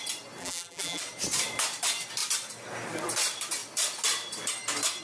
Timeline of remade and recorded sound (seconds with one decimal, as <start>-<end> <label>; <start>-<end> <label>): 0.0-0.4 recorded; 0.4-1.0 remade; 1.0-5.0 recorded